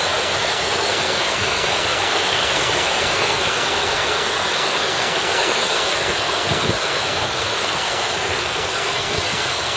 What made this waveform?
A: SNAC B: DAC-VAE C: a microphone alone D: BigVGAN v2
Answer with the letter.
A